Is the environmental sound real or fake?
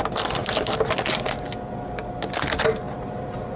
real